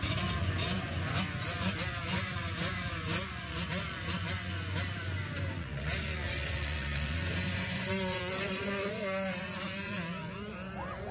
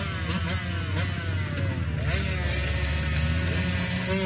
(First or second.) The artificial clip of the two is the first